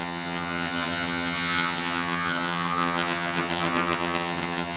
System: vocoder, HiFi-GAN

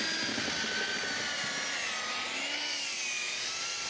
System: none